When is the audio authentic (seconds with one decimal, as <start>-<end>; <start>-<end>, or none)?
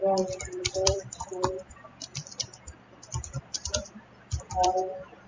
0.0-0.6; 2.1-3.5